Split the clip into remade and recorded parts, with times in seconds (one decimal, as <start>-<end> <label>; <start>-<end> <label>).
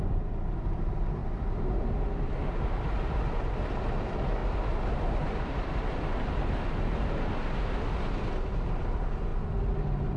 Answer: 0.0-1.2 remade; 1.2-2.4 recorded; 2.4-9.3 remade; 9.3-10.2 recorded